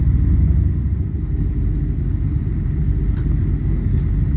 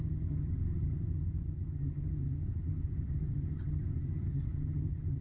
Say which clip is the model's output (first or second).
second